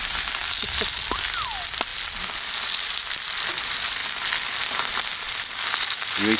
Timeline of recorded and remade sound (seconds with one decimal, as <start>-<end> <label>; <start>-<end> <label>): 0.0-6.4 recorded